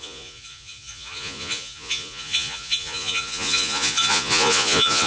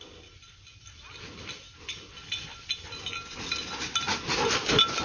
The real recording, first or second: second